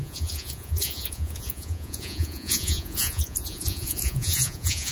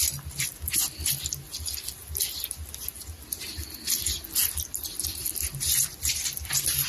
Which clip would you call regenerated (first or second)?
first